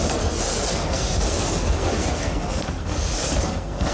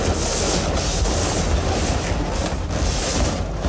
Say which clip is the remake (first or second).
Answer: first